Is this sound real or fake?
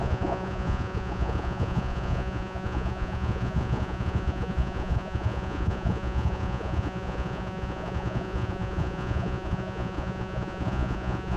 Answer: fake